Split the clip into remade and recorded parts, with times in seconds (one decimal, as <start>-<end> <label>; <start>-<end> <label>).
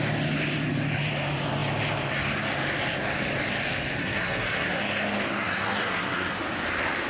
0.0-4.0 recorded; 4.0-4.8 remade; 4.8-5.4 recorded; 5.4-6.4 remade; 6.4-7.1 recorded